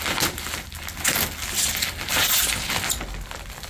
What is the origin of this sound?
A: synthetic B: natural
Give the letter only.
B